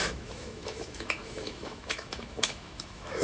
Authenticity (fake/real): fake